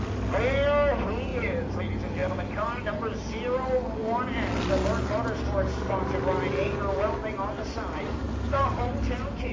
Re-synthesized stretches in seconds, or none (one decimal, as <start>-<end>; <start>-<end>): 1.3-1.8; 2.2-2.9; 7.2-8.8